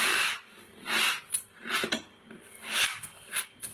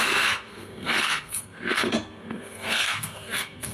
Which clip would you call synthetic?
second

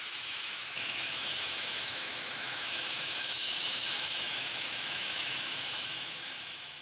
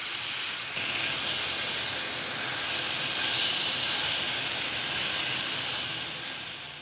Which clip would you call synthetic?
first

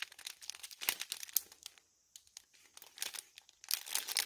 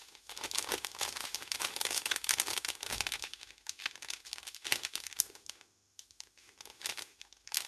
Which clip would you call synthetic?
second